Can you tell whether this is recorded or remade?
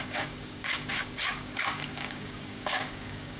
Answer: remade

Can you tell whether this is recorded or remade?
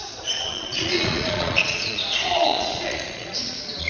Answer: remade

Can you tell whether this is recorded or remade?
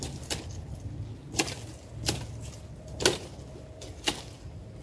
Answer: recorded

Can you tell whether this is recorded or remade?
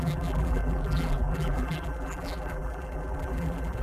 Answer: remade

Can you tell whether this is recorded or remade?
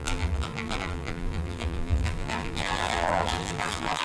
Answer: remade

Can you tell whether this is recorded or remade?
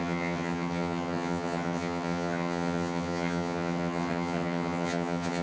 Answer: remade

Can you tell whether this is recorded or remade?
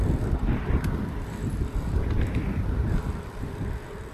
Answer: remade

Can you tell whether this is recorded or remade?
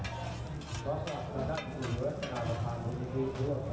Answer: recorded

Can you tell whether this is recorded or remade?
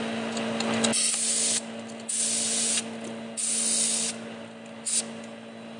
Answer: recorded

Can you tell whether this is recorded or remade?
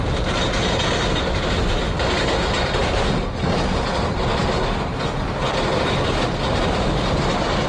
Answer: recorded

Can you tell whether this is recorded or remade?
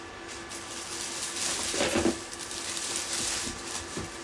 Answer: recorded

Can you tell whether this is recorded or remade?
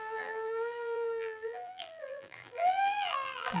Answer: remade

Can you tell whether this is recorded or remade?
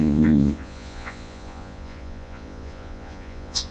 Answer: remade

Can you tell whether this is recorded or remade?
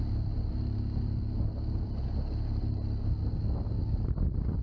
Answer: recorded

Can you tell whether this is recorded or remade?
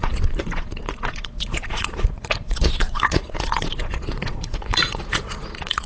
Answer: remade